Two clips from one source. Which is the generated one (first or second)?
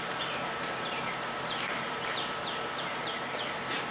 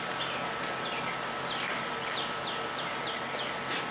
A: first